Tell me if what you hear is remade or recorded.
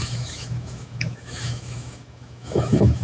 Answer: remade